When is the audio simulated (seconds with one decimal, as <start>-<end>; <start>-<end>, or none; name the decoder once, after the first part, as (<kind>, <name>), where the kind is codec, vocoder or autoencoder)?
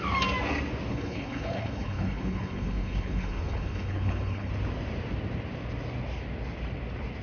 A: 0.9-4.5 (codec, HILCodec)